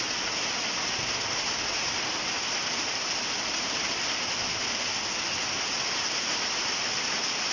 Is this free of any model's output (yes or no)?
yes